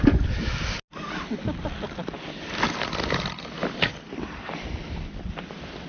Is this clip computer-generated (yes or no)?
no